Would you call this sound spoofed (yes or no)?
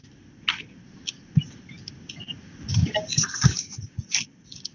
no